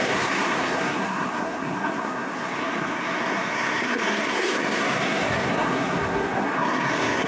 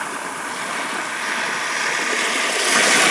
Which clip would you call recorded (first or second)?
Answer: second